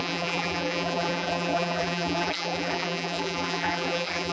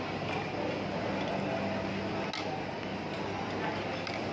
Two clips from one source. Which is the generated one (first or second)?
first